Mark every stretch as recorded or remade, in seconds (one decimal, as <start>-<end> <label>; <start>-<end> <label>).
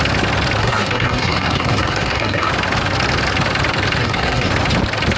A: 0.0-0.6 recorded; 0.6-2.5 remade; 2.5-4.0 recorded; 4.0-4.5 remade; 4.5-5.2 recorded